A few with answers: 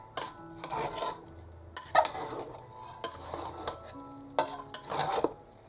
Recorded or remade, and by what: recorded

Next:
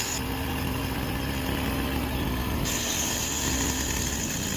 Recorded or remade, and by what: recorded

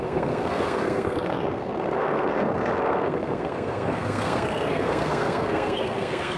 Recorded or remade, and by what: remade, codec, SNAC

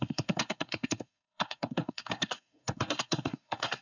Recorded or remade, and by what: remade, codec, SNAC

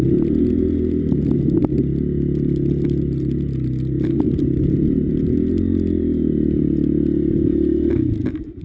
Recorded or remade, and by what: recorded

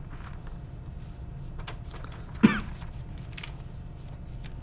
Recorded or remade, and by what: recorded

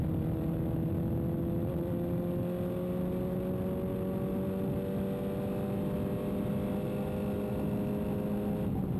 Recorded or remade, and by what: recorded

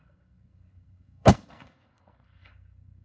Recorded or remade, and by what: remade, codec, SNAC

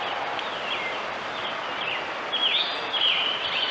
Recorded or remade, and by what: recorded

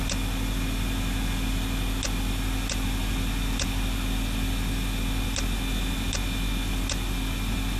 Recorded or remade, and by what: recorded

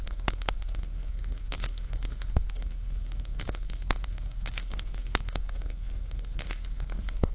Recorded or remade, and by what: remade, codec, SNAC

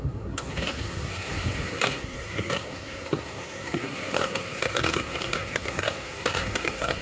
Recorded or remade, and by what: remade, codec, SNAC